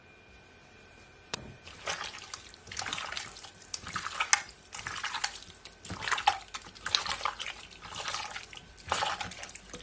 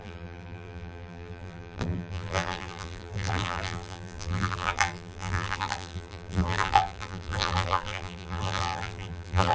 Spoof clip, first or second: second